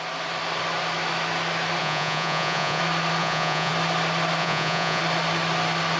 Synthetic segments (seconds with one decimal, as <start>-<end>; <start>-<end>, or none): 1.8-2.8; 3.2-3.7; 4.4-5.0